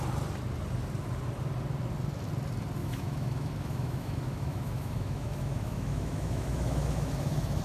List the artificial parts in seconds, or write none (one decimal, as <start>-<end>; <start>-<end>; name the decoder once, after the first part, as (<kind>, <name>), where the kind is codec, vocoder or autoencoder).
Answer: 2.8-7.6 (autoencoder, DAC-VAE)